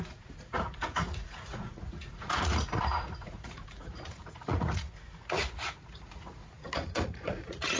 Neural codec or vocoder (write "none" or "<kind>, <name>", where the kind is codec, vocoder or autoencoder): vocoder, Vocos